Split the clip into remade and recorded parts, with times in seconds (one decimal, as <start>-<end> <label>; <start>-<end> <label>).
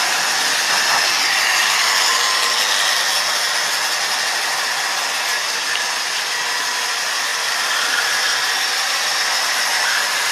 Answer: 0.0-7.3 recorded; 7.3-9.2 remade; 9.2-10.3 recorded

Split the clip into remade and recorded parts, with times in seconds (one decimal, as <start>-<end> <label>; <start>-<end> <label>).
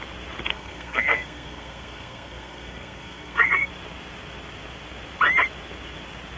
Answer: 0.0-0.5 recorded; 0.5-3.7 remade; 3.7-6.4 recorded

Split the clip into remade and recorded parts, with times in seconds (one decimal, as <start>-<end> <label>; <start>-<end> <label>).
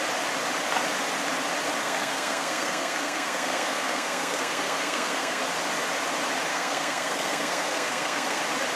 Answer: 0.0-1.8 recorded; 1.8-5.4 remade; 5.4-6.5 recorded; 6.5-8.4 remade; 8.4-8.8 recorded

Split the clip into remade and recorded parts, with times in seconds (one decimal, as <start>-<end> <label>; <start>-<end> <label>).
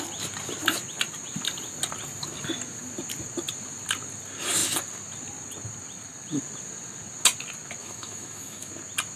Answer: 0.0-7.8 recorded; 7.8-8.7 remade; 8.7-9.2 recorded